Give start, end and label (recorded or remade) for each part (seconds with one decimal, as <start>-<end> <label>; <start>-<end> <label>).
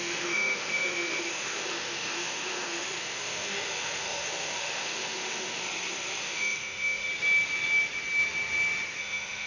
0.0-5.6 remade; 5.6-6.2 recorded; 6.2-7.1 remade; 7.1-9.0 recorded; 9.0-9.5 remade